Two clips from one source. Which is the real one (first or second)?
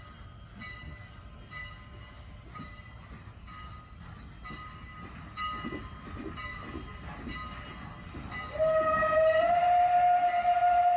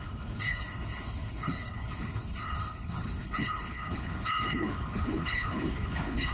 first